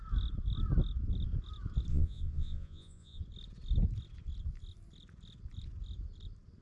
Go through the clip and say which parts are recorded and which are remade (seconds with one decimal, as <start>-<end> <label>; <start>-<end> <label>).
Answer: 0.0-1.9 recorded; 1.9-3.2 remade; 3.2-6.6 recorded